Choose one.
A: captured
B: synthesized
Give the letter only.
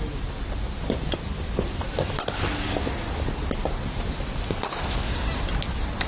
A